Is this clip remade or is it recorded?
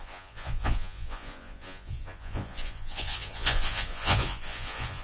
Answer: remade